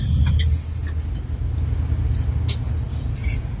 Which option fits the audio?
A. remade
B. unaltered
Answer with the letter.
B